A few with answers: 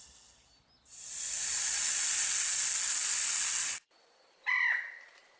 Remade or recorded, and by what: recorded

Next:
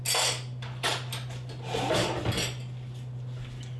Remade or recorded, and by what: recorded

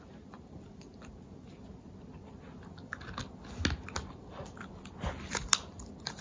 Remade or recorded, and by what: recorded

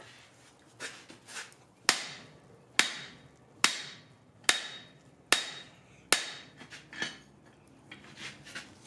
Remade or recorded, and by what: recorded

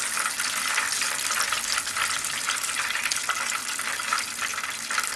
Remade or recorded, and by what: recorded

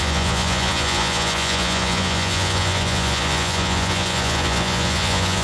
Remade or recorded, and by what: remade, vocoder, Vocos